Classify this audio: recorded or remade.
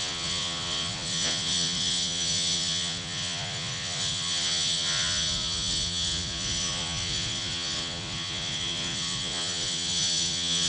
remade